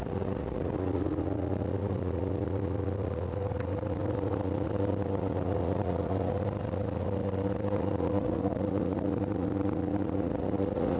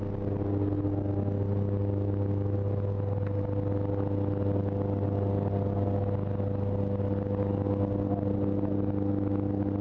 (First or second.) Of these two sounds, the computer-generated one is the first